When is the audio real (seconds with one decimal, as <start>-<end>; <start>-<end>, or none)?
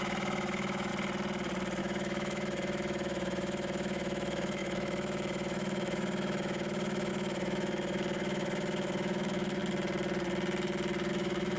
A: 0.9-1.8; 9.6-11.1